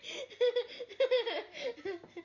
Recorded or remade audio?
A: recorded